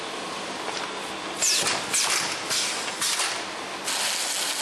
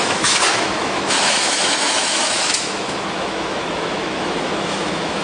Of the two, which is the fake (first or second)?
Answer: second